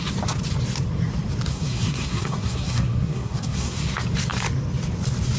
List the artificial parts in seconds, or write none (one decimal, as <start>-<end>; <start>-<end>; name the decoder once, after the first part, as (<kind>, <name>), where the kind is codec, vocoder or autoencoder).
1.5-3.8 (codec, SNAC)